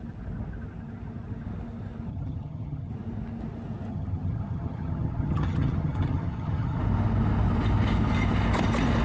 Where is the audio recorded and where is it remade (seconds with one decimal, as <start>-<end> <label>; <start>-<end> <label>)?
0.0-2.1 recorded; 2.1-2.9 remade; 2.9-3.9 recorded; 3.9-6.8 remade; 6.8-9.0 recorded